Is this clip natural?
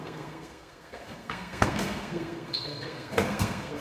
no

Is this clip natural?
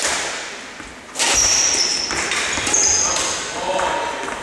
yes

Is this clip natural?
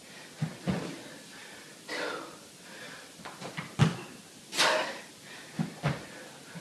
yes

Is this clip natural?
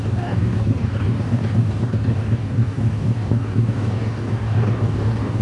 no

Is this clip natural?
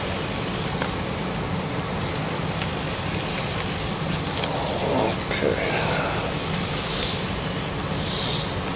yes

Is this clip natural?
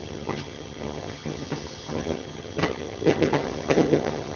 no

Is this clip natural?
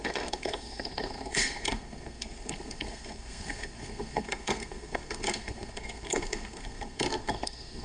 no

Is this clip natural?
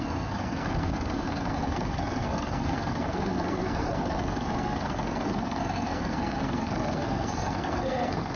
no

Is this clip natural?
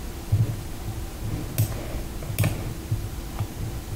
yes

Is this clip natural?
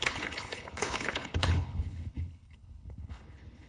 no